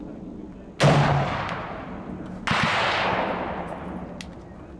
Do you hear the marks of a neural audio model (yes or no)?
no